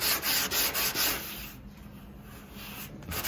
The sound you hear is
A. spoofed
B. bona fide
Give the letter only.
B